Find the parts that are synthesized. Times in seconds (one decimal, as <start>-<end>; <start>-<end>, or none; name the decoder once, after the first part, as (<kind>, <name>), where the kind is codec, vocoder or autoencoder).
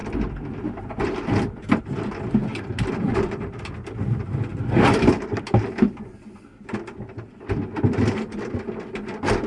0.0-1.8 (vocoder, BigVGAN v2); 2.5-3.7; 4.5-6.6